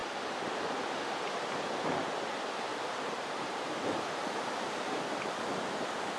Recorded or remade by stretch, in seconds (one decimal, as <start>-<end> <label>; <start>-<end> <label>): 0.0-2.7 recorded; 2.7-5.0 remade; 5.0-6.2 recorded